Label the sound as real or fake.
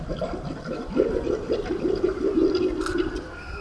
fake